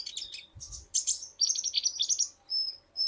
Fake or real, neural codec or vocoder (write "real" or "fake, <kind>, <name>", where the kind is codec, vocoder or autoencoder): real